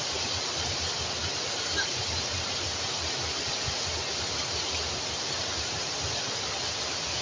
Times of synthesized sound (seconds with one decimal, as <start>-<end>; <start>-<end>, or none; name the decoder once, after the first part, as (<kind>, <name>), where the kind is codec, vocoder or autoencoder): none